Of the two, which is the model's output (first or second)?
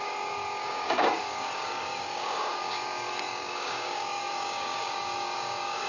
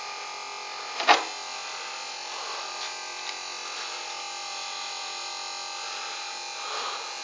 first